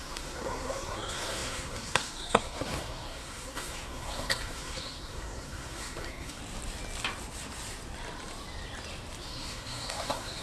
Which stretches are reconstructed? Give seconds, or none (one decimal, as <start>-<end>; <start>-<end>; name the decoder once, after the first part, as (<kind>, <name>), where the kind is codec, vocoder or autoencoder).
0.0-6.4 (codec, SNAC); 9.2-10.4